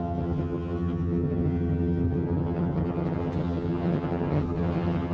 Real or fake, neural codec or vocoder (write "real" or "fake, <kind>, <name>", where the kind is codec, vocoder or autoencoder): fake, vocoder, HiFi-GAN